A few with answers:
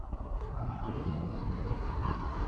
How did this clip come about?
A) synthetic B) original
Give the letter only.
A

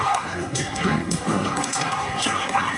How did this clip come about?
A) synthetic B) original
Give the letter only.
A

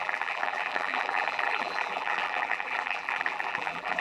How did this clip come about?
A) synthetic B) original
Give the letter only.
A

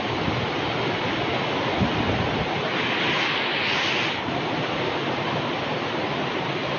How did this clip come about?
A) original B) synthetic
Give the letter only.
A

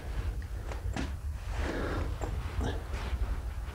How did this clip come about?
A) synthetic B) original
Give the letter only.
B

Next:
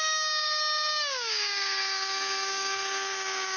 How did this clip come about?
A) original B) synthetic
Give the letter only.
B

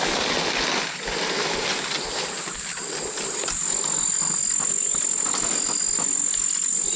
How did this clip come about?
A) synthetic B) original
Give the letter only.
B